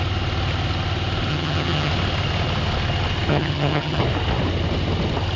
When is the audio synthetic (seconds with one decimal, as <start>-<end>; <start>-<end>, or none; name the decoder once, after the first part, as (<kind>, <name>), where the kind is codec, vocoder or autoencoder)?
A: 1.3-1.9 (vocoder, HiFi-GAN); 3.3-4.0